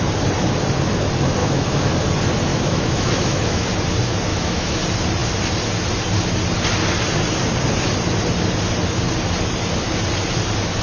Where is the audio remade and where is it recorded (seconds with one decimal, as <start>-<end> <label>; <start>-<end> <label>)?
0.0-1.4 recorded; 1.4-1.9 remade; 1.9-2.5 recorded; 2.5-3.7 remade; 3.7-4.3 recorded; 4.3-4.8 remade; 4.8-10.8 recorded